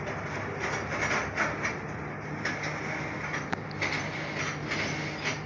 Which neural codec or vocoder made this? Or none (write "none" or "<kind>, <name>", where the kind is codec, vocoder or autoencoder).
none